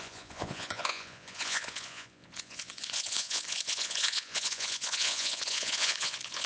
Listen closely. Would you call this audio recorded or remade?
remade